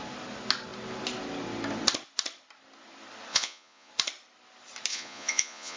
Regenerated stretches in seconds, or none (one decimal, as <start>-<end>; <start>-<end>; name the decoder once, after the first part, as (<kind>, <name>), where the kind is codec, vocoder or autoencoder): 3.3-3.9 (vocoder, Vocos); 4.9-5.8